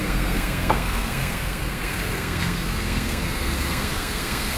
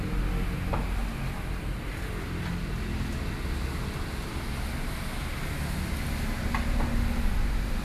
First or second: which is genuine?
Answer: second